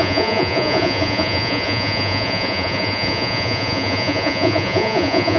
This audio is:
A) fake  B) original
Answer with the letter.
A